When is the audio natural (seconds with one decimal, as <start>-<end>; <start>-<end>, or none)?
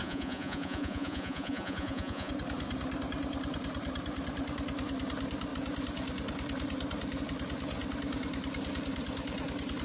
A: 2.3-9.8